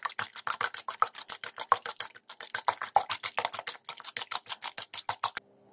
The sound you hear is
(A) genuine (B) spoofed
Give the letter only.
A